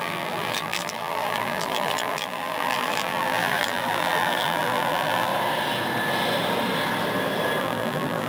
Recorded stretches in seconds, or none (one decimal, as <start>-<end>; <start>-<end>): 5.3-7.6